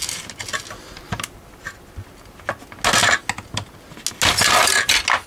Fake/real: real